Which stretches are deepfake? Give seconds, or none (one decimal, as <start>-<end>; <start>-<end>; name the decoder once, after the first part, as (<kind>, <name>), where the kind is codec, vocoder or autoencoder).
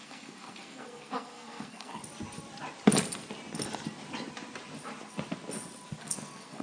0.0-2.0 (codec, SNAC); 6.0-6.6